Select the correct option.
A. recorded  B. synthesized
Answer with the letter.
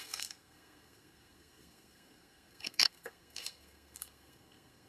B